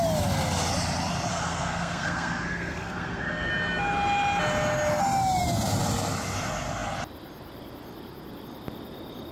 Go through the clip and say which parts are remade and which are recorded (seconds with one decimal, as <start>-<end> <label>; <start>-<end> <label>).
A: 0.0-1.3 recorded; 1.3-3.5 remade; 3.5-9.3 recorded